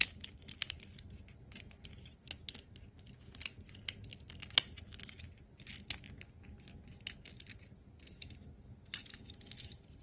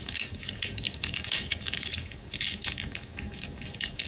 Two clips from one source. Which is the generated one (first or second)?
second